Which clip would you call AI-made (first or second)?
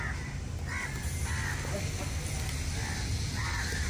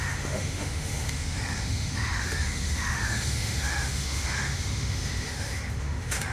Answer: second